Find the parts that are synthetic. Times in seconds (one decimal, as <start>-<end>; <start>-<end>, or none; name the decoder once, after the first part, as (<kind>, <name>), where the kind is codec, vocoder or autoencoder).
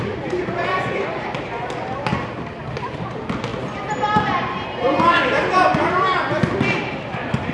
none